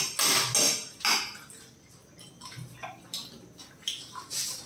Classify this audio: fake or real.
real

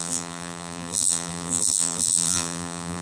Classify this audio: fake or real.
fake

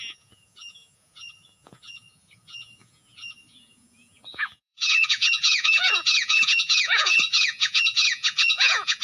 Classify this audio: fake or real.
fake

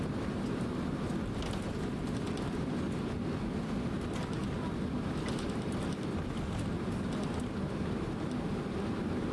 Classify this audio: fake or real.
real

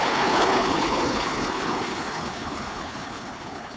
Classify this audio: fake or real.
fake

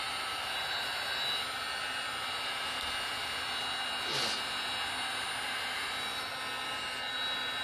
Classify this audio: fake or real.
real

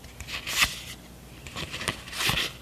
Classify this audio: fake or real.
real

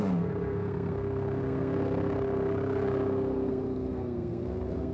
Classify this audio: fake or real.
fake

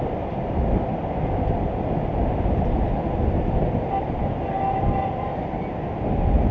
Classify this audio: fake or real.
real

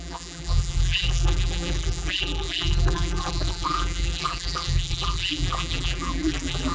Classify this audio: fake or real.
fake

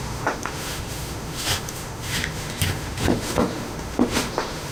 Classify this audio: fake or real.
fake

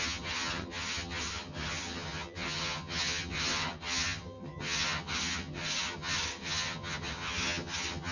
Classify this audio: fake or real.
fake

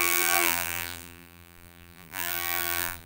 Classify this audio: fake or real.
fake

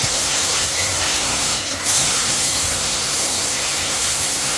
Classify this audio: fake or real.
fake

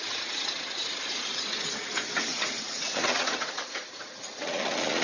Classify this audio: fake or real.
fake